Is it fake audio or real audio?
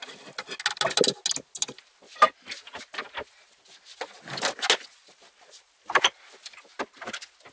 real